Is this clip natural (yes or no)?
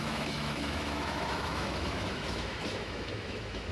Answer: no